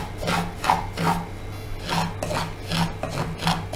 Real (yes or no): yes